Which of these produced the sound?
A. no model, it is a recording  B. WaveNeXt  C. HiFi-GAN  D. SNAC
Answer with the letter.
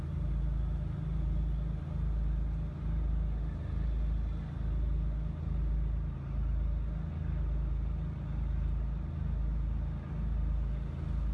A